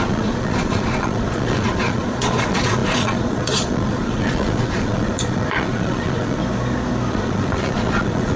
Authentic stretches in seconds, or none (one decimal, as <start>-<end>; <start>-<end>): 6.4-7.1